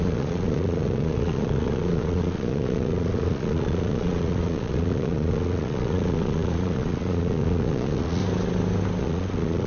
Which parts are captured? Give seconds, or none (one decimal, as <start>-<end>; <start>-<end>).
8.2-9.0